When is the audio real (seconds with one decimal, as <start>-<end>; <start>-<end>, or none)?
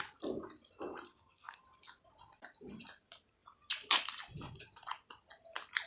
0.0-1.1; 1.6-5.9